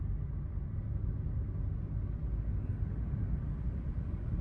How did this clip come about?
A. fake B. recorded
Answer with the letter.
B